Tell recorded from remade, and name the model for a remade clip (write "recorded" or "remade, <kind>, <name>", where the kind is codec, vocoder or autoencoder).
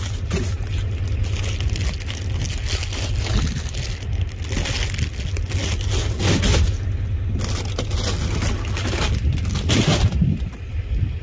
recorded